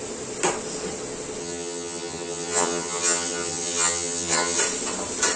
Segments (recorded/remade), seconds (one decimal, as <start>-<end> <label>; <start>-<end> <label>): 0.0-1.4 recorded; 1.4-4.6 remade; 4.6-5.4 recorded